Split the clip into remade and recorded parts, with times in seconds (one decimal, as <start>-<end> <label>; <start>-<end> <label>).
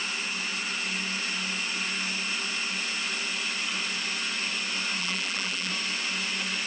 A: 0.0-5.0 recorded; 5.0-5.7 remade; 5.7-6.7 recorded